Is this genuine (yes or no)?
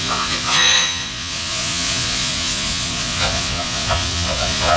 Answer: no